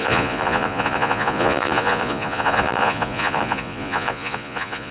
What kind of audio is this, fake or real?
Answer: fake